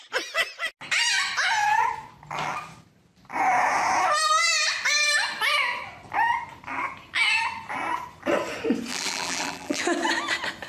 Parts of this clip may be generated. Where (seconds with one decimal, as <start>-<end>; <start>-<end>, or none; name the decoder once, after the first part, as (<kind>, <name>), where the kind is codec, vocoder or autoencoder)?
8.9-9.8 (vocoder, BigVGAN v2)